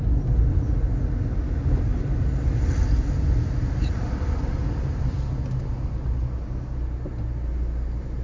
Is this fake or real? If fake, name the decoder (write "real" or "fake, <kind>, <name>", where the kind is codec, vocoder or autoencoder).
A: real